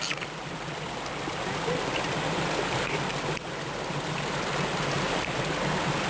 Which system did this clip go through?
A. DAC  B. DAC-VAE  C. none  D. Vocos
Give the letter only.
C